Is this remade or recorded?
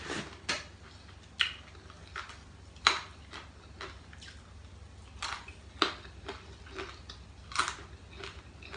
recorded